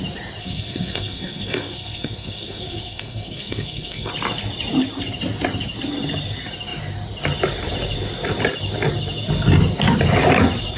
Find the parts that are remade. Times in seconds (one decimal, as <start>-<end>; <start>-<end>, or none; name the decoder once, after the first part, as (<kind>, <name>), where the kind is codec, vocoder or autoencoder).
0.4-4.1 (codec, SNAC)